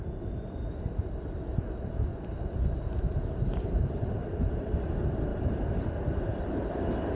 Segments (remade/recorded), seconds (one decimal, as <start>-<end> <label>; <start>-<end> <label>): 0.0-2.1 remade; 2.1-2.9 recorded; 2.9-7.1 remade